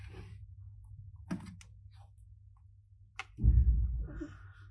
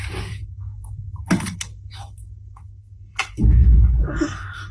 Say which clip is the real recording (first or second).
first